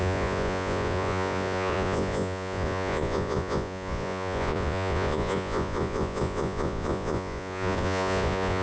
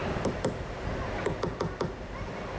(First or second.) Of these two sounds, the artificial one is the first